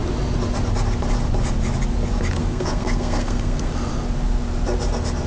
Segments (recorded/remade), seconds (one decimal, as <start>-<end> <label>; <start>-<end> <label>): 0.0-2.4 recorded; 2.4-3.7 remade; 3.7-5.3 recorded